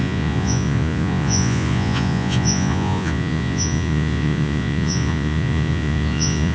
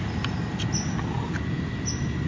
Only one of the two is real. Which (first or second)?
second